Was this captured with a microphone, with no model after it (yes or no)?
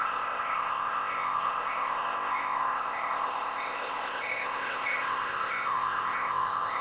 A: no